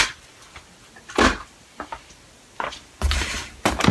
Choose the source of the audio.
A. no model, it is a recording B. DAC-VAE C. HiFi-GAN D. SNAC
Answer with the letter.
A